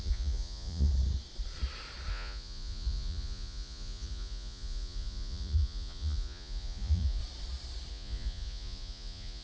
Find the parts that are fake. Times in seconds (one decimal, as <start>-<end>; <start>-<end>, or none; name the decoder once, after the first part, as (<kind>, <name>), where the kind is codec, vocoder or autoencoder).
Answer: 0.0-0.9 (vocoder, Vocos); 2.1-7.2; 7.9-9.4

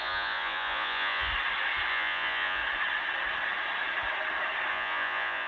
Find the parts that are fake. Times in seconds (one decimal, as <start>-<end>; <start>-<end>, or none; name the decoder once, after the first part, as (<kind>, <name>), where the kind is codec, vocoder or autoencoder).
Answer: 0.0-1.3 (vocoder, Vocos); 1.9-2.6; 4.7-5.5

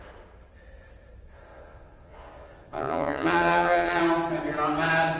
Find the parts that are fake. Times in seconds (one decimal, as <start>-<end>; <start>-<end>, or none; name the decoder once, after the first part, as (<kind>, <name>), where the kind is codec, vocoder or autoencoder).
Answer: 1.5-4.0 (vocoder, Vocos)